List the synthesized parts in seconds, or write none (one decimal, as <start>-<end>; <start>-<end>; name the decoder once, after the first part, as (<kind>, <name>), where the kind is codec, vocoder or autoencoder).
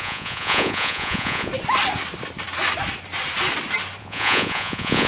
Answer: 0.0-1.5 (vocoder, Vocos); 4.0-5.1